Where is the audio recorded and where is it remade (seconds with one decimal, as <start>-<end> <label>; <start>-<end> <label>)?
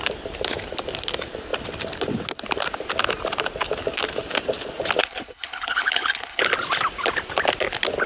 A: 0.0-5.0 recorded; 5.0-6.4 remade; 6.4-8.1 recorded